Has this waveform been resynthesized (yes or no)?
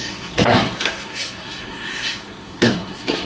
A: yes